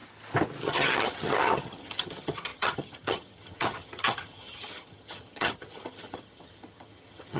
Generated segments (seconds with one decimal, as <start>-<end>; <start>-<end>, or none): 0.6-7.4